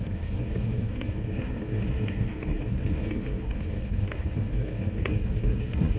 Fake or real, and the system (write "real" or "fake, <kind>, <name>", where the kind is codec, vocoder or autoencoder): fake, codec, SNAC